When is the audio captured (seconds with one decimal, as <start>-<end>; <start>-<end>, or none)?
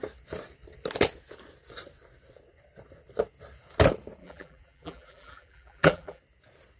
0.0-4.2; 6.2-6.8